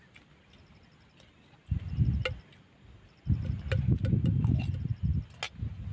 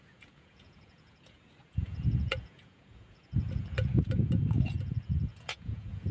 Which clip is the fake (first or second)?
second